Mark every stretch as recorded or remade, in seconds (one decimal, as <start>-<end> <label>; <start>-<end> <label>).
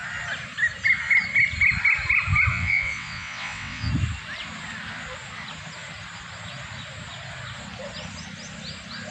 0.0-2.5 recorded; 2.5-3.9 remade; 3.9-9.1 recorded